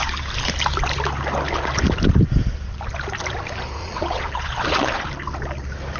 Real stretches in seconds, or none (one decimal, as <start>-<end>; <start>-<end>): 0.0-3.8; 5.1-6.0